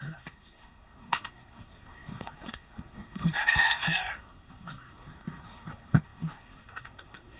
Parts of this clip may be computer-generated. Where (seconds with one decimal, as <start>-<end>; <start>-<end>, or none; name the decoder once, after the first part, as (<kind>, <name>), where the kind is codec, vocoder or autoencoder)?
0.0-7.4 (codec, SNAC)